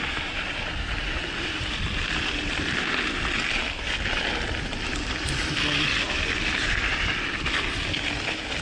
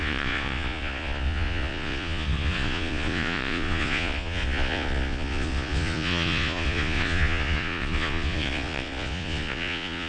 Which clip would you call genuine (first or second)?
first